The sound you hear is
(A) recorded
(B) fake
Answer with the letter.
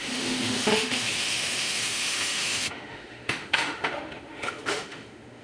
B